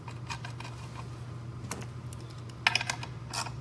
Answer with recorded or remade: recorded